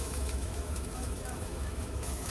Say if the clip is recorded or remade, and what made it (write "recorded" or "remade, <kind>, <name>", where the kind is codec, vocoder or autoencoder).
remade, autoencoder, DAC-VAE